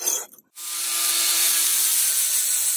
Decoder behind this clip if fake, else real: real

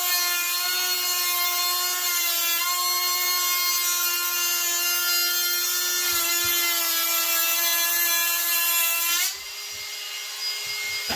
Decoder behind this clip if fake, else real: real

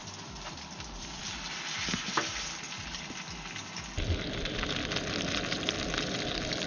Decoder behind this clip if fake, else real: real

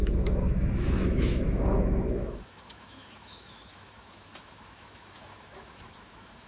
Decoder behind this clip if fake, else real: fake, autoencoder, DAC-VAE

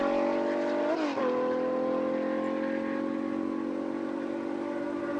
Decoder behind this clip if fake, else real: real